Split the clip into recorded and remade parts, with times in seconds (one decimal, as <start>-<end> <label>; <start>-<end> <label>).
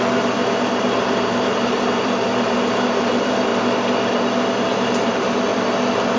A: 0.0-3.5 remade; 3.5-4.6 recorded; 4.6-6.2 remade